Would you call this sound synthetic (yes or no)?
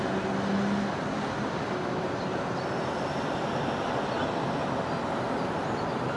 no